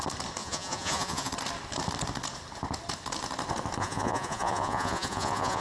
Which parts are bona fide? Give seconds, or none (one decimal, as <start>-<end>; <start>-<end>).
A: 0.0-0.4; 1.3-3.8